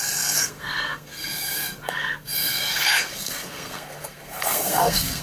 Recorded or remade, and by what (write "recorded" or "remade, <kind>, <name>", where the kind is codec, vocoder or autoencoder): remade, codec, SNAC